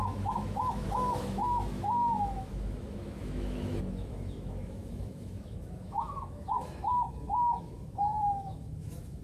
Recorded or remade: remade